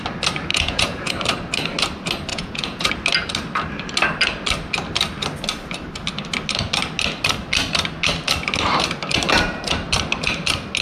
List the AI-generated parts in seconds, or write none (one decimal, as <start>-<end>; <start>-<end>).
0.5-1.1; 2.3-2.9